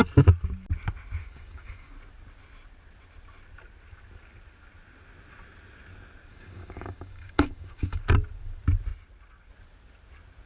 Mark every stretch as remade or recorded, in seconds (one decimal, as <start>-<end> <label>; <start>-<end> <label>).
0.0-1.2 recorded; 1.2-1.9 remade; 1.9-6.3 recorded; 6.3-8.0 remade; 8.0-10.5 recorded